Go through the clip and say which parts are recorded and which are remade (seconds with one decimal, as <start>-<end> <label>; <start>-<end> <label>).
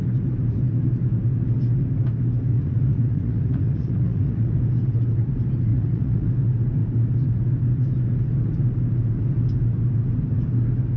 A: 0.0-2.5 recorded; 2.5-4.6 remade; 4.6-5.7 recorded; 5.7-6.3 remade; 6.3-11.0 recorded